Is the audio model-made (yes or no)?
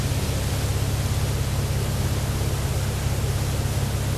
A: no